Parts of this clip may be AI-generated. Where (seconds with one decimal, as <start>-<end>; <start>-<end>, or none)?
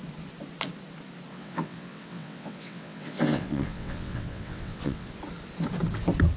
1.3-5.1